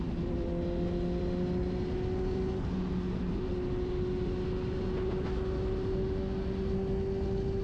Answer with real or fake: real